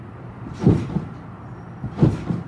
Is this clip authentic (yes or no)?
no